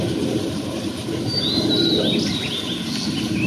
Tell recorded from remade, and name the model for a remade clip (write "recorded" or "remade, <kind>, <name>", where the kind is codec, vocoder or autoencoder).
recorded